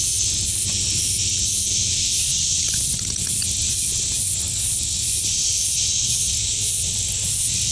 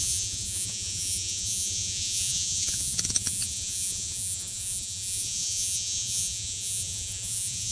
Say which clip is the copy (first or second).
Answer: second